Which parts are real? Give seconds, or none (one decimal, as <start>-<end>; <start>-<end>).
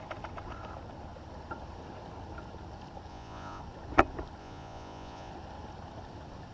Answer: 0.0-3.1; 3.6-4.4; 5.3-6.5